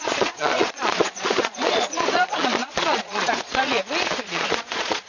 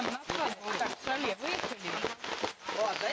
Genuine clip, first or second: second